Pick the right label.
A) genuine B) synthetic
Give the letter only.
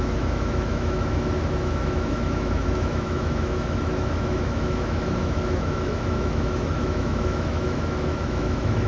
B